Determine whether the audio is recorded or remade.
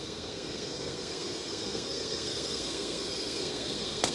remade